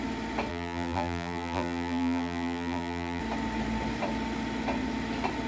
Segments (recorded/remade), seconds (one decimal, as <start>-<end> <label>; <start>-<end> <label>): 0.0-0.5 recorded; 0.5-3.2 remade; 3.2-5.5 recorded